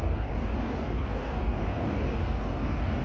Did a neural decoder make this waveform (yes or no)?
yes